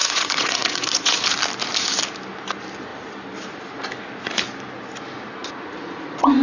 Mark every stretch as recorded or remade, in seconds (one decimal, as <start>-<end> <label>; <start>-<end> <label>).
0.0-1.2 remade; 1.2-5.4 recorded; 5.4-6.4 remade

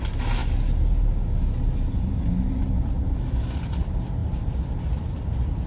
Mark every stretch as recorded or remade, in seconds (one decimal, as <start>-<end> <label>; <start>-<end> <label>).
0.0-5.7 recorded

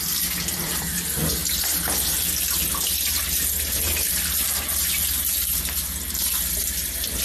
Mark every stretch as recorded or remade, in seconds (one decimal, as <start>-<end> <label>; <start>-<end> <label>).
0.0-7.2 recorded